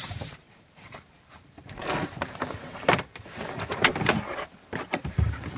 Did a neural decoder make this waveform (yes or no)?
yes